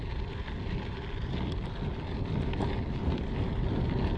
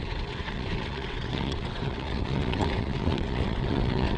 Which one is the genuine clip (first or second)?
first